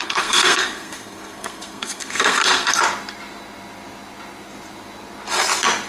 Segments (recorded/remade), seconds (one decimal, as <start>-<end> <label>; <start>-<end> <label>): 0.0-2.7 remade; 2.7-5.9 recorded